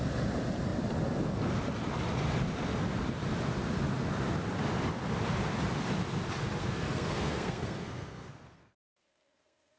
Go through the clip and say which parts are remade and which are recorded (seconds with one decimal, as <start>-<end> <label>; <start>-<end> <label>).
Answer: 0.0-6.6 recorded; 6.6-9.8 remade